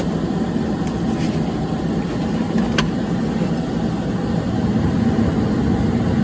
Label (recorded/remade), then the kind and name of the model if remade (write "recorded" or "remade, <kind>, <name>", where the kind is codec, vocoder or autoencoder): recorded